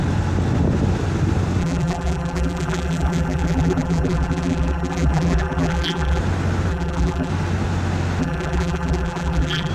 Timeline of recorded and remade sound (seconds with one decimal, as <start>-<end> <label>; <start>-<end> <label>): 0.0-1.6 recorded; 1.6-6.2 remade; 6.2-6.7 recorded; 6.7-7.3 remade; 7.3-8.2 recorded; 8.2-9.7 remade